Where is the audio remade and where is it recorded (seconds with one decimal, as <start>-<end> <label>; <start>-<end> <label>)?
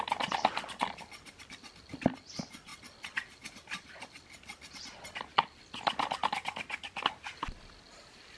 0.0-8.4 recorded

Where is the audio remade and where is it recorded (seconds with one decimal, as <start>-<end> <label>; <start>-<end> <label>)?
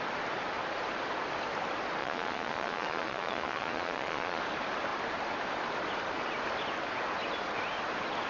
0.0-2.0 recorded; 2.0-4.4 remade; 4.4-8.3 recorded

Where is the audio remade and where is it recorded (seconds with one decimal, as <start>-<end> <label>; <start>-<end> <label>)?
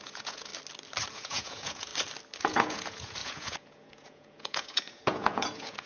0.0-0.5 remade; 0.5-1.1 recorded; 1.1-1.9 remade; 1.9-2.4 recorded; 2.4-5.9 remade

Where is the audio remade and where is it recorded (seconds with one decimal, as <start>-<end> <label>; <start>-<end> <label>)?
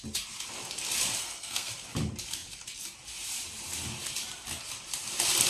0.0-1.2 recorded; 1.2-1.7 remade; 1.7-5.5 recorded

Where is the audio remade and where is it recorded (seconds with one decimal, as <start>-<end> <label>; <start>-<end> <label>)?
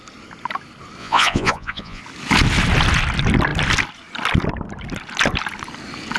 0.0-1.0 recorded; 1.0-2.0 remade; 2.0-6.2 recorded